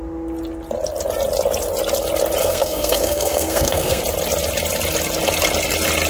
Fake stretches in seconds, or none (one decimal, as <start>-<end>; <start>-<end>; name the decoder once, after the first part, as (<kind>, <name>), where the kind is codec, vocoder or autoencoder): 2.4-4.0 (codec, SNAC)